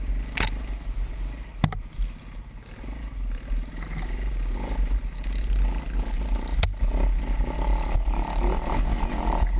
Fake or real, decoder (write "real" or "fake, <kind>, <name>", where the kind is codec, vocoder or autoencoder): real